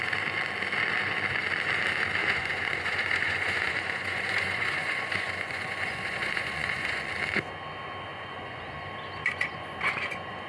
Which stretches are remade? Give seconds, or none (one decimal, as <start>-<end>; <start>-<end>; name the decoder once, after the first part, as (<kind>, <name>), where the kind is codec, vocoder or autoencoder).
2.2-7.1 (vocoder, Vocos); 8.1-8.7; 9.2-10.5